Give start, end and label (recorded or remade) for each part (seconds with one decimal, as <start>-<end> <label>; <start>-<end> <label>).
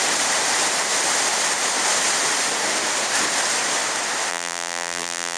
0.0-4.3 recorded; 4.3-5.4 remade